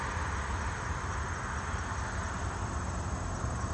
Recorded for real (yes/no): yes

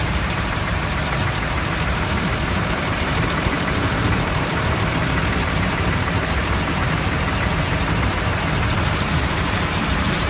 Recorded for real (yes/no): no